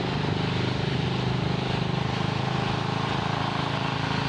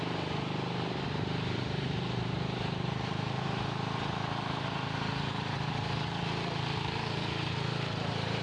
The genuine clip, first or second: first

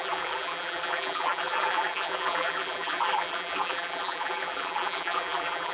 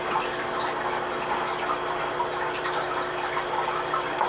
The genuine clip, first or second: second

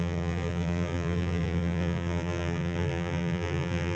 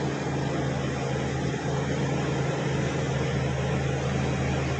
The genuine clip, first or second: second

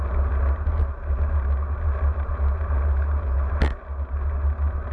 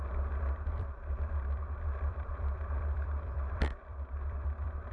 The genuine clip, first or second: first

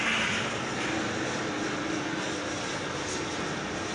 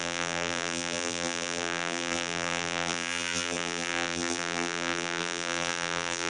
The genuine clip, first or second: first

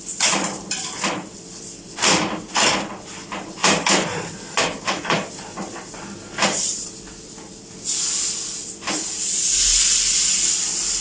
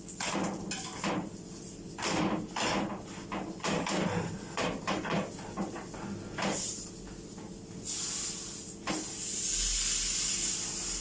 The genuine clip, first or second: second